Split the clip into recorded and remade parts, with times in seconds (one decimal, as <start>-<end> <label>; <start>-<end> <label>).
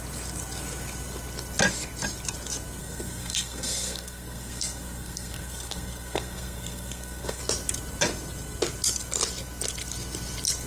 0.0-2.8 recorded; 2.8-7.4 remade; 7.4-10.7 recorded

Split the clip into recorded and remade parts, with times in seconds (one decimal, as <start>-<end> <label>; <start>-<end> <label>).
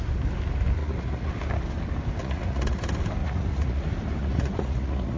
0.0-0.8 recorded; 0.8-1.3 remade; 1.3-2.2 recorded; 2.2-2.8 remade; 2.8-3.2 recorded; 3.2-3.8 remade; 3.8-4.2 recorded; 4.2-5.2 remade